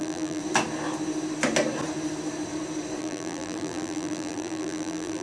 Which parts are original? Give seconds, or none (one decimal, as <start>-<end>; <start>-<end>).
0.4-3.0